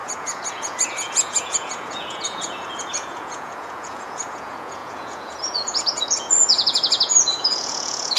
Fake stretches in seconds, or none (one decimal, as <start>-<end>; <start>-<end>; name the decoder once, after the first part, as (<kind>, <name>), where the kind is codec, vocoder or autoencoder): 0.0-8.2 (vocoder, Vocos)